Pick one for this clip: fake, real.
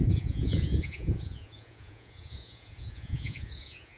fake